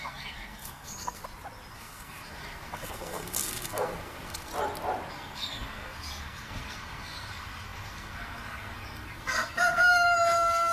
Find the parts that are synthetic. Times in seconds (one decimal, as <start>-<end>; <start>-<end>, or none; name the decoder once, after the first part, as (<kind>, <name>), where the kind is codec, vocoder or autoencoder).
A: 0.0-1.2 (codec, SNAC); 1.7-4.5; 5.1-10.7